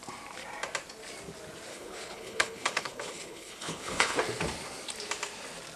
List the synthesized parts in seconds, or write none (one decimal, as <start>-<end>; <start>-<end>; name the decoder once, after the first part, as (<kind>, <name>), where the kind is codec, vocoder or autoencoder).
1.7-4.2 (codec, HILCodec)